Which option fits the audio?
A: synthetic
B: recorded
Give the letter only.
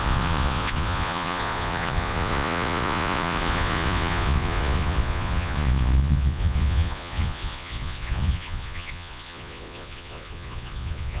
A